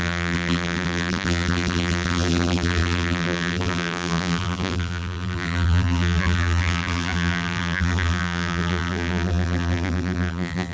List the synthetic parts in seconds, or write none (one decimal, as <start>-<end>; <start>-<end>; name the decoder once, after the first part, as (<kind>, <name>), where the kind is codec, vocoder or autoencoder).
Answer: 0.0-10.7 (vocoder, BigVGAN v2)